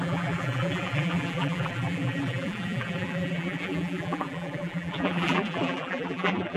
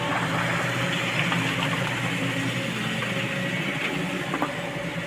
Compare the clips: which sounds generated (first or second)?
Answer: first